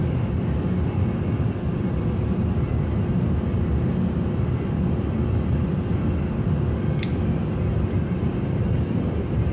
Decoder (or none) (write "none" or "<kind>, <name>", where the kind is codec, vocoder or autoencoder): none